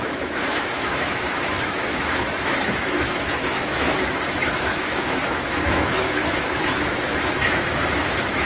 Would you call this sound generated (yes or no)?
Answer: yes